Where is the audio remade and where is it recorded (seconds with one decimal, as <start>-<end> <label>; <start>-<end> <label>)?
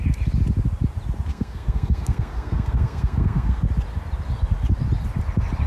0.0-1.3 recorded; 1.3-3.6 remade; 3.6-5.7 recorded